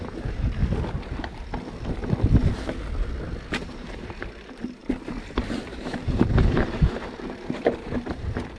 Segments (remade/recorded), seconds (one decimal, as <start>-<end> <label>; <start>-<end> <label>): 0.0-0.6 remade; 0.6-3.5 recorded; 3.5-8.6 remade